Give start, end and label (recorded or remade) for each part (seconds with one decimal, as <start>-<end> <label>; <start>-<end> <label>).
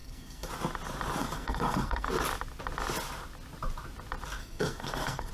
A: 0.0-0.5 remade; 0.5-1.2 recorded; 1.2-2.1 remade; 2.1-4.4 recorded; 4.4-5.3 remade